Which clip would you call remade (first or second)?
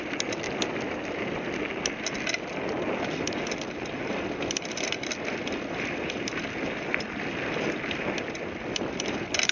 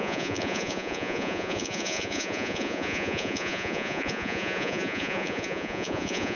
second